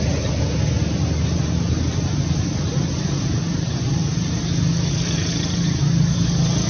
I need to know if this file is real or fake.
real